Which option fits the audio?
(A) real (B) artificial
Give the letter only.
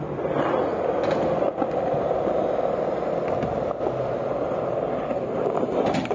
A